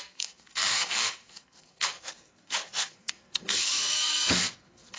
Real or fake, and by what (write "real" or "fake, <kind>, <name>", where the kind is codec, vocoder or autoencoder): fake, codec, SNAC